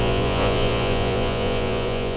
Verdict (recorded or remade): remade